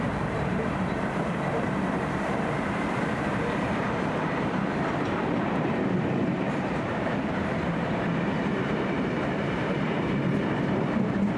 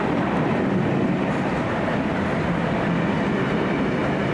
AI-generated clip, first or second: first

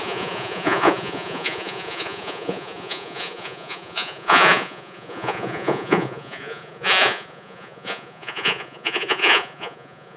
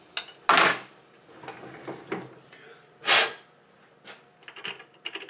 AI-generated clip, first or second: first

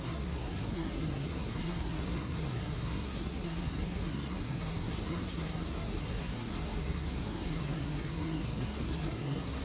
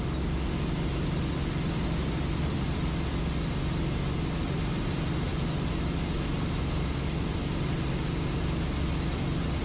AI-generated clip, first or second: first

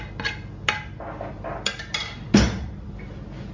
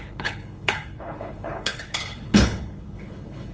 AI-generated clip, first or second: second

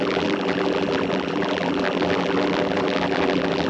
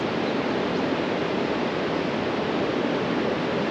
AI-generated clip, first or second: first